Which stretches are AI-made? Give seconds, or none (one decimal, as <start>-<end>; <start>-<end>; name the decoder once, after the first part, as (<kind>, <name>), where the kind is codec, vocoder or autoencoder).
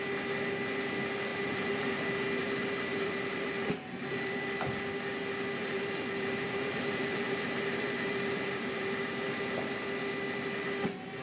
1.3-2.0 (vocoder, BigVGAN v2); 2.4-4.7; 5.6-9.0